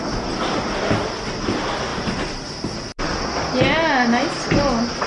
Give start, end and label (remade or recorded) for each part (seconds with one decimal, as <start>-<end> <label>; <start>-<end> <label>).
0.0-5.1 recorded